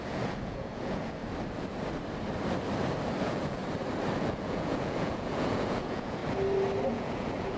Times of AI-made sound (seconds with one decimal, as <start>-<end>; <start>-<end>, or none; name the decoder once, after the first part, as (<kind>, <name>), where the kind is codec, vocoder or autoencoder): 0.0-1.2 (vocoder, Vocos); 3.2-3.6; 4.2-6.2; 6.9-7.6